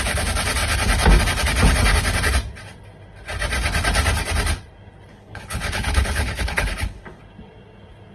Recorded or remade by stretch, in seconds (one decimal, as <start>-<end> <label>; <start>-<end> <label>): 0.0-5.1 recorded; 5.1-7.2 remade; 7.2-8.1 recorded

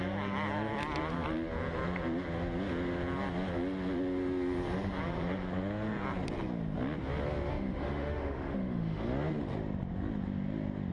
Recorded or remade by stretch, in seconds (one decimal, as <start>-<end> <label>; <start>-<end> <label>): 0.0-7.5 recorded; 7.5-9.0 remade; 9.0-10.9 recorded

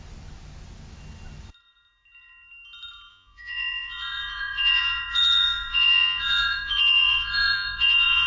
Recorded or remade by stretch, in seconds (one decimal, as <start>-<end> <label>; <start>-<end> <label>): 0.0-3.1 recorded; 3.1-8.3 remade

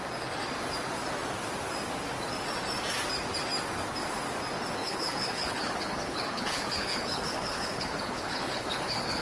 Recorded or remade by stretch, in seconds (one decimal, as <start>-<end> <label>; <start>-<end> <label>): 0.0-4.8 recorded; 4.8-9.2 remade

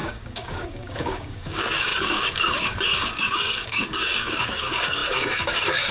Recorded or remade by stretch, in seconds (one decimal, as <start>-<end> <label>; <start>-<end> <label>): 0.0-5.9 remade

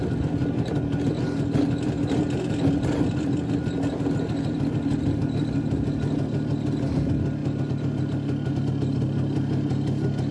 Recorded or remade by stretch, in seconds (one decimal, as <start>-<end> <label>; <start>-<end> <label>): 0.0-10.3 recorded

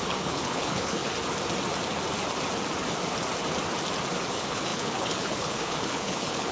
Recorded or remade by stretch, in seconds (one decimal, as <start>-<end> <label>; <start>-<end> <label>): 0.0-1.0 remade; 1.0-4.3 recorded; 4.3-6.5 remade